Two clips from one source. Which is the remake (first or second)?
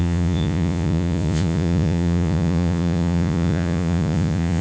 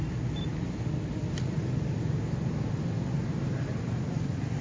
first